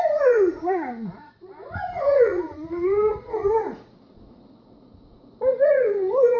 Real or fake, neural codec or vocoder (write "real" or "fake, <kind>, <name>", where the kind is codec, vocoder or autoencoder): fake, vocoder, Vocos